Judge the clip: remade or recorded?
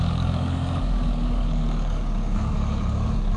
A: remade